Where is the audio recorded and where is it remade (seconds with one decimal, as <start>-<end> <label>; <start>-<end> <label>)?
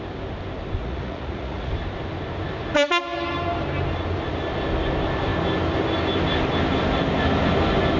0.0-0.8 recorded; 0.8-1.7 remade; 1.7-8.0 recorded